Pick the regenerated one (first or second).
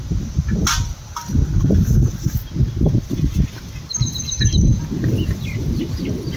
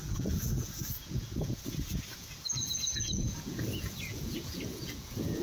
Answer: second